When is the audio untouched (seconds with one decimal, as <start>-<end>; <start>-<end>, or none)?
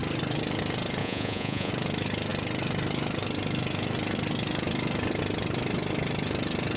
0.0-1.0; 1.7-6.8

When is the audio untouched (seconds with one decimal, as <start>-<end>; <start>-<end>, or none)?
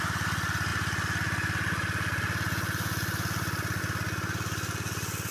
0.0-5.3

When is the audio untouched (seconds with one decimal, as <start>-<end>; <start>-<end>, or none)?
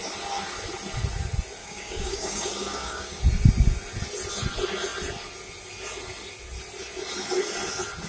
0.0-1.6; 3.2-8.1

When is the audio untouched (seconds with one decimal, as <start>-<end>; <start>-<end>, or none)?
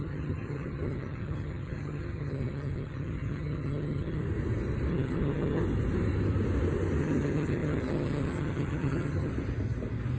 4.2-4.9; 5.6-7.0; 9.3-10.2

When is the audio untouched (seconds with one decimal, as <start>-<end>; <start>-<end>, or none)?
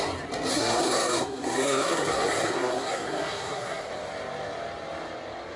0.0-0.5; 3.9-5.6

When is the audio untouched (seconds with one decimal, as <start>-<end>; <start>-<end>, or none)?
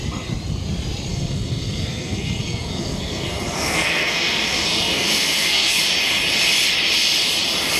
0.0-1.1; 5.8-7.8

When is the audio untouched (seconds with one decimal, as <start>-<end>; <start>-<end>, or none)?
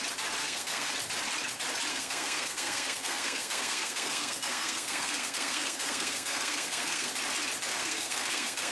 0.0-0.4; 0.9-1.9; 7.1-7.7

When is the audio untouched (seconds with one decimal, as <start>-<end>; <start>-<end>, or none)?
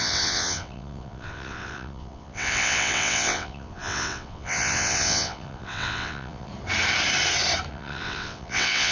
6.5-7.7